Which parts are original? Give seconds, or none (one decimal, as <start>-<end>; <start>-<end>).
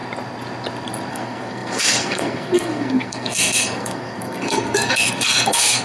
0.0-1.1